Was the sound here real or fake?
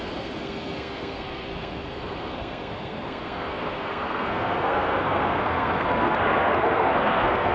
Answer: fake